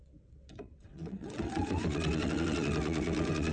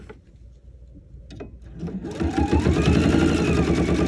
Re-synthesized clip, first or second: first